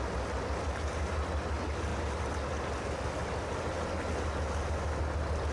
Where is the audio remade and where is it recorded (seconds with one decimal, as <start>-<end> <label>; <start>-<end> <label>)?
0.0-5.5 recorded